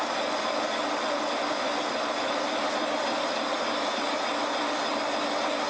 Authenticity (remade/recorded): recorded